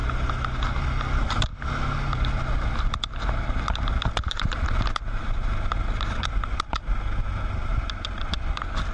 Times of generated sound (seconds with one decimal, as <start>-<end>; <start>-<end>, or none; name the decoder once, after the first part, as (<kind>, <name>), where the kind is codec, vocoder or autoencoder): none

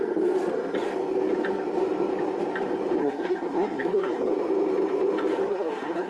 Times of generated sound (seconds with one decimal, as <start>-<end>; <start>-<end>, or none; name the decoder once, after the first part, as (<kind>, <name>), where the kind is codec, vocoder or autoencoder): 3.0-4.3 (codec, SNAC); 5.5-6.1

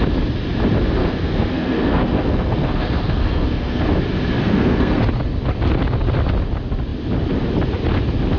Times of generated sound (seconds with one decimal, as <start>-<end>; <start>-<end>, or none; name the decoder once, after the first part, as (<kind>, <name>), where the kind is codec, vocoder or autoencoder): 1.0-3.8 (codec, SNAC); 4.4-5.0

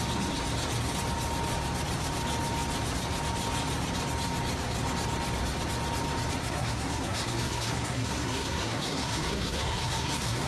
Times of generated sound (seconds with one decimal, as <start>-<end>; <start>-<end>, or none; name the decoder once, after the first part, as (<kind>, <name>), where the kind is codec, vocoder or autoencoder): 6.4-10.5 (codec, SNAC)

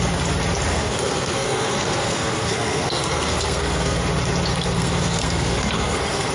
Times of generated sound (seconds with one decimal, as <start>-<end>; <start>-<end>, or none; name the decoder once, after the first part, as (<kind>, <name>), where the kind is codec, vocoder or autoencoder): 0.7-4.0 (codec, SNAC); 4.5-6.3

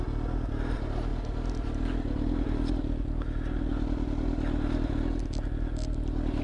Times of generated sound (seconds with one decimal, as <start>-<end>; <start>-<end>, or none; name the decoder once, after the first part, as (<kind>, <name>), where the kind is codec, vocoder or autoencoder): none

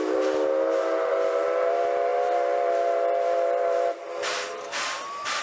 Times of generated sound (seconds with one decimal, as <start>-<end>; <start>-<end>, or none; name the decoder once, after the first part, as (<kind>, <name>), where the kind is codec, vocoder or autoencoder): none

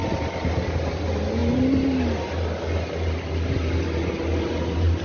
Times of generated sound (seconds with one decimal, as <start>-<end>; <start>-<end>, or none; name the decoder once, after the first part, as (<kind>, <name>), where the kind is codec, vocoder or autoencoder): none